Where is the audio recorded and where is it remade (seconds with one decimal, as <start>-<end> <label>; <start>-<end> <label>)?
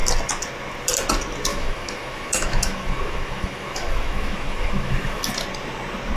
0.0-1.5 recorded; 1.5-5.2 remade; 5.2-6.2 recorded